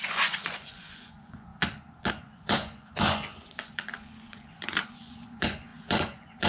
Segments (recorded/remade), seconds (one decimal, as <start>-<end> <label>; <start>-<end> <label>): 0.0-1.5 remade; 1.5-2.1 recorded; 2.1-6.5 remade